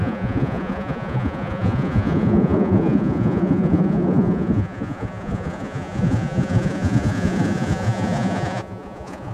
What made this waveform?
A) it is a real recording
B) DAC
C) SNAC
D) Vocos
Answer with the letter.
D